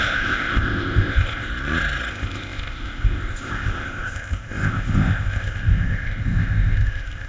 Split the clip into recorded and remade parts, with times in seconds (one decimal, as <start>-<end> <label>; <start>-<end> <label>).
0.0-1.5 remade; 1.5-2.1 recorded; 2.1-7.3 remade

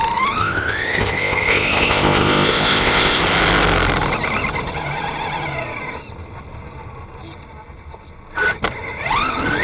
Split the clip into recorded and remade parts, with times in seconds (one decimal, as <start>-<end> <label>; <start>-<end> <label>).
0.0-0.4 recorded; 0.4-3.2 remade; 3.2-9.6 recorded

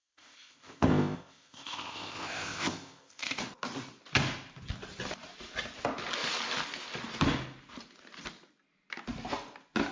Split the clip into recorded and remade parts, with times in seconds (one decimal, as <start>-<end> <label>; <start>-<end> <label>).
0.0-3.4 remade; 3.4-9.9 recorded

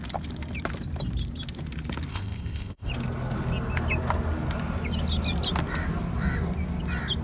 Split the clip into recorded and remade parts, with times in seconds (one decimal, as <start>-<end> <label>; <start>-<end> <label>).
0.0-2.1 recorded; 2.1-2.9 remade; 2.9-7.2 recorded

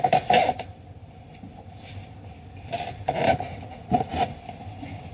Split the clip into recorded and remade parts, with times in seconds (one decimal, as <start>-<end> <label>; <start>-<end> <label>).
0.0-5.1 recorded